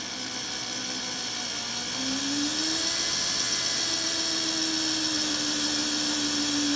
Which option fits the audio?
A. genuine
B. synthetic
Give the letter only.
A